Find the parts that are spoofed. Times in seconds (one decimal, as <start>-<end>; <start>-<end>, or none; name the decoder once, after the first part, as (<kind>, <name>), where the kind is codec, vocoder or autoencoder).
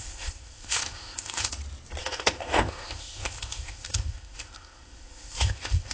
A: 0.0-1.5 (codec, ZipCodec); 2.0-5.9